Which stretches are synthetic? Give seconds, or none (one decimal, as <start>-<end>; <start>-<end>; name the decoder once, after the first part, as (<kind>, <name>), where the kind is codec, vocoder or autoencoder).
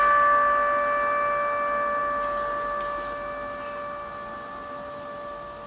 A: none